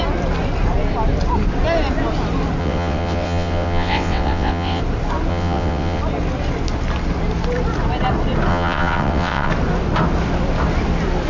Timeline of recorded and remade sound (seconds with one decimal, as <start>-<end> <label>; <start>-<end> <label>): 0.0-2.6 recorded; 2.6-4.8 remade; 4.8-5.3 recorded; 5.3-6.0 remade; 6.0-8.5 recorded; 8.5-9.5 remade; 9.5-11.3 recorded